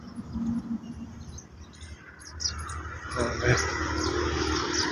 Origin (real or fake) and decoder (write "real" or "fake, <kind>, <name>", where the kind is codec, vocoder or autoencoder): real